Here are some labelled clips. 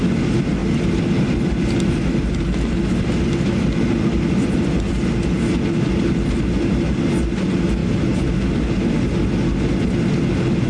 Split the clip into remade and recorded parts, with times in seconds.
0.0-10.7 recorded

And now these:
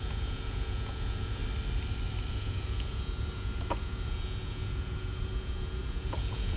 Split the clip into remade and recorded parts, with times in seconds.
0.0-1.4 remade; 1.4-2.3 recorded; 2.3-6.6 remade

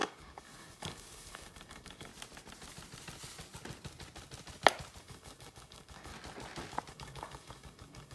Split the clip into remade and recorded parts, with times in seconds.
0.0-2.1 remade; 2.1-5.0 recorded; 5.0-6.1 remade; 6.1-6.9 recorded; 6.9-8.1 remade

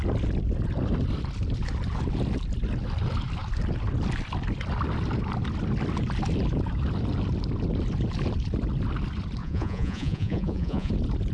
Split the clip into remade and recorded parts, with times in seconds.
0.0-9.4 recorded; 9.4-10.9 remade; 10.9-11.3 recorded